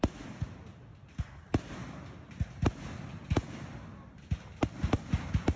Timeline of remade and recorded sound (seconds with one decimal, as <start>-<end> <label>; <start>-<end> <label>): 0.0-5.6 recorded